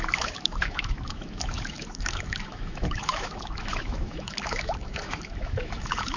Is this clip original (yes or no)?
no